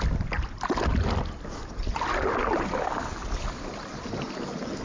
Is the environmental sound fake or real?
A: real